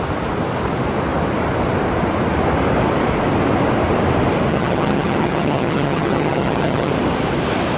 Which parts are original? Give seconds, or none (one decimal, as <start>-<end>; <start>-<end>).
0.0-4.5; 6.9-7.8